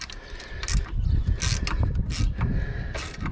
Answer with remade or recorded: recorded